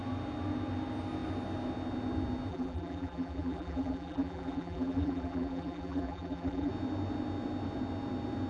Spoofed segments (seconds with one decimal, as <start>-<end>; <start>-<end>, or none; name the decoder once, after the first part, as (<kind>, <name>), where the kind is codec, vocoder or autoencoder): 2.5-6.7 (vocoder, BigVGAN v2)